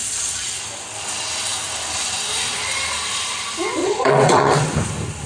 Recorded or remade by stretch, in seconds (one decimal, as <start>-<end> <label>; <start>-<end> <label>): 0.0-0.6 remade; 0.6-3.8 recorded; 3.8-4.7 remade; 4.7-5.3 recorded